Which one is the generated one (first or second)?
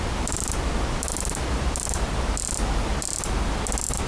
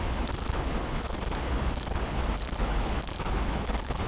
second